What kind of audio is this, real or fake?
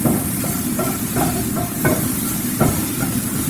real